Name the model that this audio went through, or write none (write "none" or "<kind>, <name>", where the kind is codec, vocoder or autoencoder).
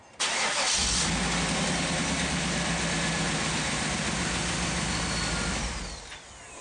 none